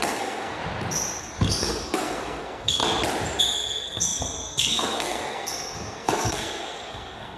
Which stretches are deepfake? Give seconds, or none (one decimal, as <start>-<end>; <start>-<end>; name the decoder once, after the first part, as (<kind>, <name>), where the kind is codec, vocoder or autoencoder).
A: 0.0-0.6 (codec, SNAC); 1.2-2.8; 3.4-7.4